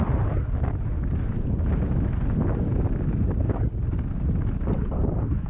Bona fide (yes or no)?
yes